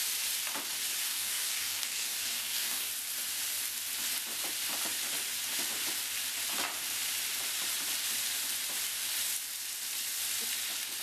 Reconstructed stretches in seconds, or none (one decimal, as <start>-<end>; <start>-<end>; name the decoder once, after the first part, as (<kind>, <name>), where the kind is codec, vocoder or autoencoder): 1.0-2.9 (codec, DAC)